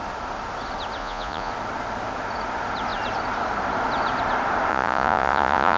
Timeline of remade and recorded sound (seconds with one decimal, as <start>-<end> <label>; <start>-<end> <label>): 0.0-1.0 recorded; 1.0-1.5 remade; 1.5-4.7 recorded; 4.7-5.8 remade